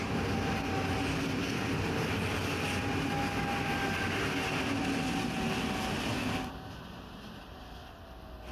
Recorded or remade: recorded